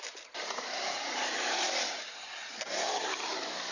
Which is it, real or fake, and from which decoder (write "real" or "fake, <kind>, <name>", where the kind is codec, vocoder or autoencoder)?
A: real